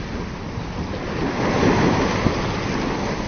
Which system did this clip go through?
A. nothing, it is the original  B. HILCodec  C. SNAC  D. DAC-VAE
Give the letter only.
A